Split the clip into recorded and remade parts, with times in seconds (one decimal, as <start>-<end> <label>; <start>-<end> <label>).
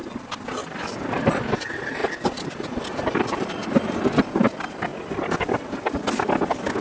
0.0-1.1 remade; 1.1-2.0 recorded; 2.0-4.2 remade; 4.2-6.8 recorded